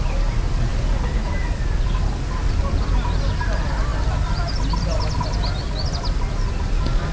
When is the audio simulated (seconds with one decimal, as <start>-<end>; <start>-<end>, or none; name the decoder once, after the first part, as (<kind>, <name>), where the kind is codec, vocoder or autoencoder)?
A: none